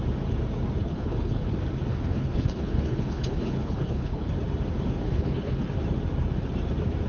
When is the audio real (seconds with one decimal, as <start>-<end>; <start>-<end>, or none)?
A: 0.0-0.8; 1.5-1.9; 4.3-5.0; 5.6-7.1